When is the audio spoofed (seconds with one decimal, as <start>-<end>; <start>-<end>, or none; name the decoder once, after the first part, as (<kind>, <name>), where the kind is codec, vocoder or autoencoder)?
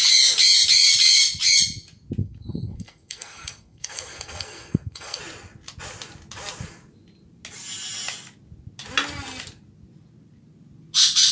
2.2-5.2 (codec, SNAC)